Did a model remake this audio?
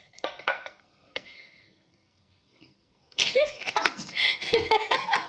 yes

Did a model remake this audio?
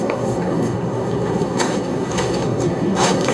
yes